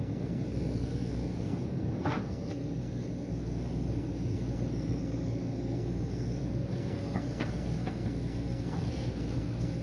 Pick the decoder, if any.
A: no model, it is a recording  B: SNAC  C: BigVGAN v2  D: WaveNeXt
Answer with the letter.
B